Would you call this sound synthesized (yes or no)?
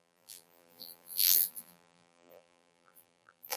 yes